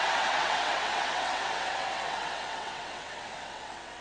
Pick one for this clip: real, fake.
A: fake